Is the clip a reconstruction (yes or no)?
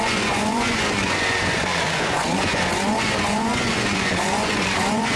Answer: yes